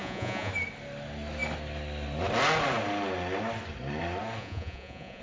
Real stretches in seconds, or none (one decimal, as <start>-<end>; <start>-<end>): 0.5-4.4